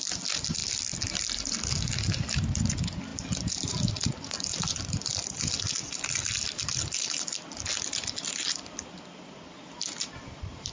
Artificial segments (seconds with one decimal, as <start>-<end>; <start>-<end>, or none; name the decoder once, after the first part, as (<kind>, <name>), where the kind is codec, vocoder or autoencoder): none